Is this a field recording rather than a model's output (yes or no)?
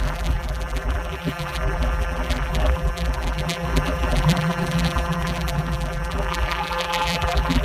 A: no